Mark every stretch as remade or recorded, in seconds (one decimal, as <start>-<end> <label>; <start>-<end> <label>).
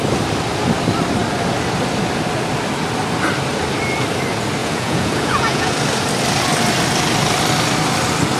0.0-4.6 recorded; 4.6-5.7 remade; 5.7-8.4 recorded